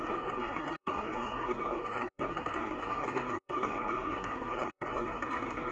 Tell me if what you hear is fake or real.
fake